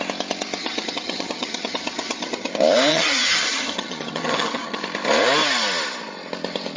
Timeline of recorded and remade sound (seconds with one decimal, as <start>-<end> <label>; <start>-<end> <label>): 0.0-0.6 recorded; 0.6-2.5 remade; 2.5-2.9 recorded; 2.9-4.8 remade; 4.8-6.8 recorded